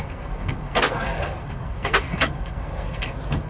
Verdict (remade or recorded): remade